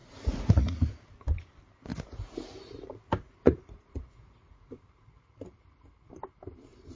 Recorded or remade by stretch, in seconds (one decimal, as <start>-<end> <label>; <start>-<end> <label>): 0.0-0.9 remade; 0.9-1.9 recorded; 1.9-2.9 remade; 2.9-3.4 recorded; 3.4-4.8 remade; 4.8-7.0 recorded